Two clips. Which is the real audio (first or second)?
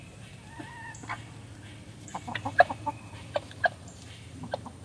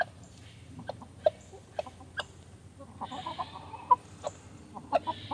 first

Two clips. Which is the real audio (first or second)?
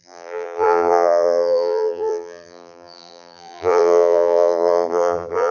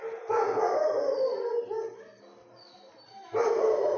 second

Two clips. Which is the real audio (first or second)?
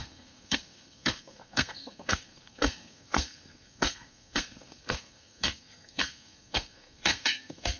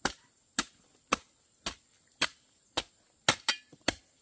second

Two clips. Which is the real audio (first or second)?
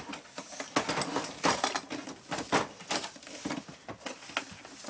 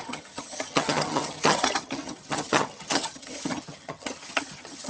first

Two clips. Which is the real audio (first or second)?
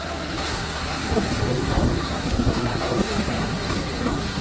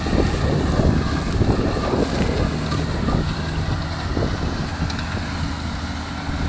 second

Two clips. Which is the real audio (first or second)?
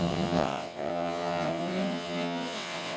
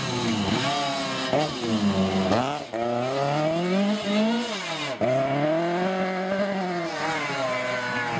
second